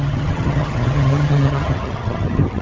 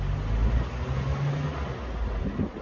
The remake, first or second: first